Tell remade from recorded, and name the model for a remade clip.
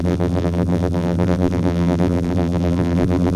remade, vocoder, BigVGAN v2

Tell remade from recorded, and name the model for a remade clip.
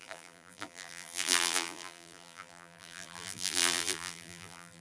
remade, vocoder, BigVGAN v2